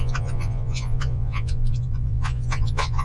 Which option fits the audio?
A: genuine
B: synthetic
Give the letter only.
B